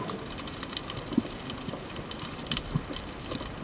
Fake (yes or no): no